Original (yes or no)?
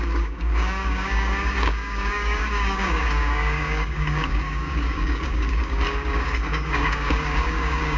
no